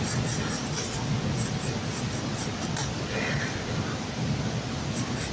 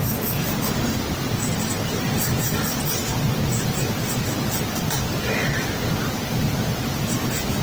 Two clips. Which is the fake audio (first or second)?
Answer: second